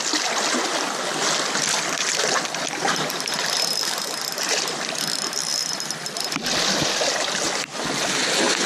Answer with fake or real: real